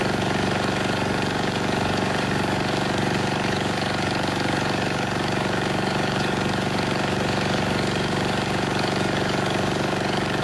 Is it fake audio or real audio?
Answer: fake